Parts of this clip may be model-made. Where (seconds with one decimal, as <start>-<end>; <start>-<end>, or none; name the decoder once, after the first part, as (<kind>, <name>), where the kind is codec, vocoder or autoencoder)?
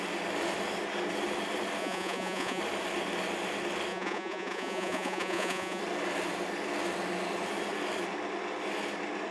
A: 1.8-2.6 (vocoder, Vocos); 3.9-5.8